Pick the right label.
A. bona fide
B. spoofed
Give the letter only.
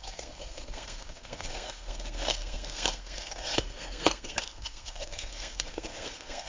B